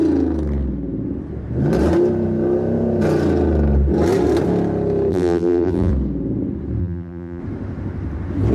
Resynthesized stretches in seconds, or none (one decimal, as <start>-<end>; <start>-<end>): 5.1-5.9; 6.8-7.4